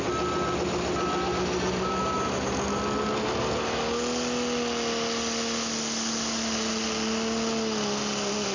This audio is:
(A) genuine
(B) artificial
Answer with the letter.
A